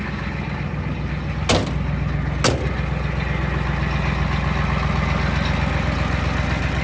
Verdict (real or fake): real